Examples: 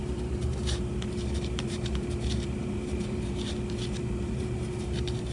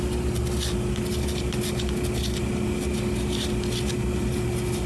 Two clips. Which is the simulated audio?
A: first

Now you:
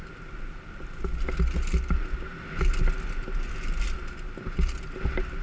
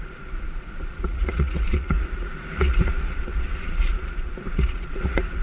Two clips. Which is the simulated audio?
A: second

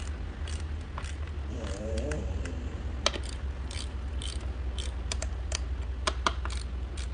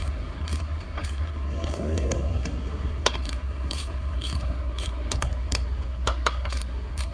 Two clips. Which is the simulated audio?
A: second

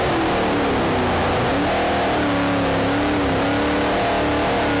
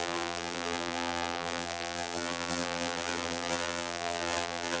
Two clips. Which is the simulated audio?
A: second